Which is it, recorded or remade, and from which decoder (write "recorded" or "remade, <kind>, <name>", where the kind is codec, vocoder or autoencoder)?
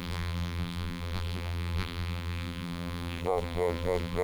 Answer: remade, vocoder, BigVGAN v2